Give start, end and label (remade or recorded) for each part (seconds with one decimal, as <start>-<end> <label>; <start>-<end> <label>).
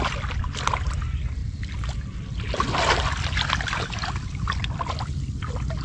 0.0-5.8 recorded